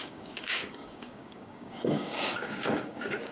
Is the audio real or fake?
fake